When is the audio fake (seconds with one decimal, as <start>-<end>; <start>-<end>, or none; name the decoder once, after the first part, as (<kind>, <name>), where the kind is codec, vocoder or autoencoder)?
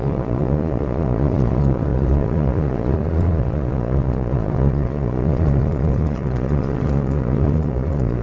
0.0-8.2 (vocoder, Vocos)